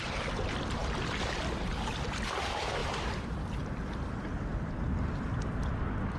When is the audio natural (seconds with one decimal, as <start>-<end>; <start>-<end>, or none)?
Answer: 0.0-6.2